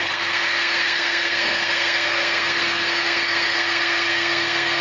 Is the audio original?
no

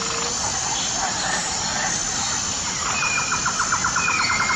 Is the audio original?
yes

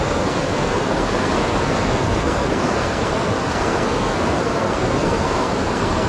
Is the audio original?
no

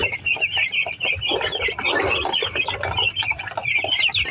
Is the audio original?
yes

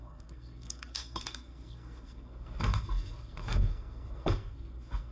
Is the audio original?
no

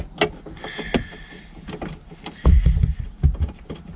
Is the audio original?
yes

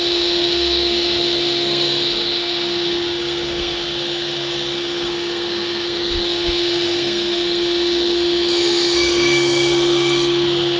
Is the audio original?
no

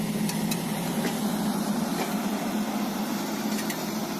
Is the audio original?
yes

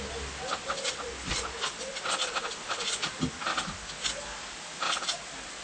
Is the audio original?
yes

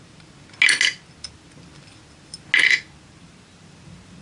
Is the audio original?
yes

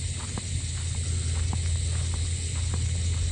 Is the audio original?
yes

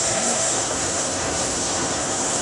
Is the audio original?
no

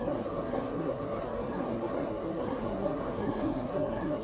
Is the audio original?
no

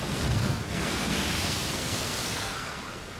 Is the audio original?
no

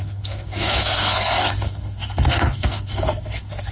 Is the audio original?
no